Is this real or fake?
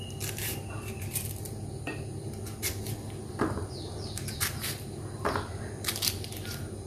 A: fake